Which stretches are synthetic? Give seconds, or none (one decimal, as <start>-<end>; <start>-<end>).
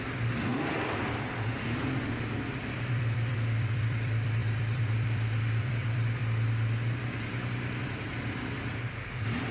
0.0-0.5; 2.9-6.2; 7.8-9.5